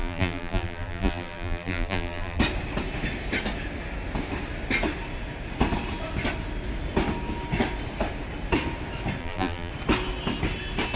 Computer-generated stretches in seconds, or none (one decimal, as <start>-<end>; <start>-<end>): 0.0-2.4; 9.2-9.7